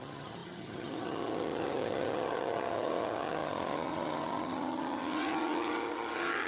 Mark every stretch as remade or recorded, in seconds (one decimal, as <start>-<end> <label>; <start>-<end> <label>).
0.0-6.5 remade